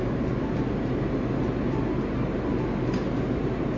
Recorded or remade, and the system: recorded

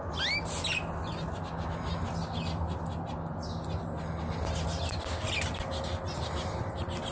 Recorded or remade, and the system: recorded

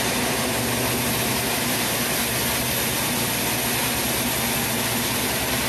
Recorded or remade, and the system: recorded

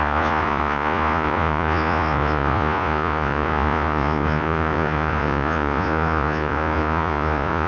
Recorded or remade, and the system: remade, vocoder, Vocos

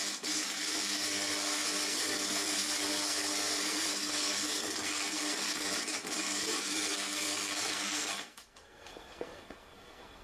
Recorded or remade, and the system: remade, codec, SNAC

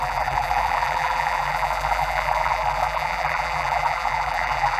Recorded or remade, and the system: remade, vocoder, BigVGAN v2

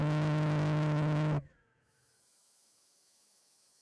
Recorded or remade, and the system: remade, autoencoder, DAC-VAE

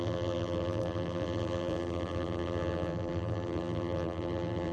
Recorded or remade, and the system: remade, vocoder, BigVGAN v2